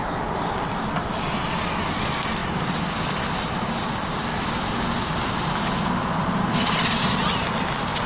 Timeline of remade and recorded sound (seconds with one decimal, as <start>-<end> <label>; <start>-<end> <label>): 0.0-8.1 recorded